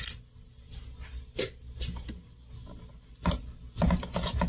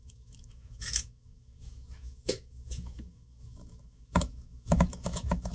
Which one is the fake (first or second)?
second